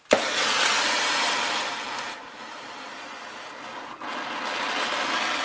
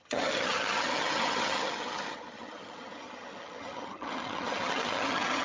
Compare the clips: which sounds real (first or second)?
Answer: first